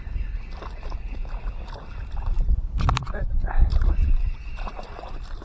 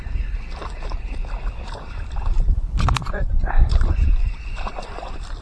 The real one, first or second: first